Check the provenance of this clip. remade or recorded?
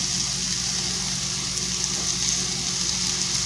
recorded